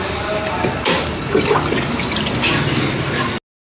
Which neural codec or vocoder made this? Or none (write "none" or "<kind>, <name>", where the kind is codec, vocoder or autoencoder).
none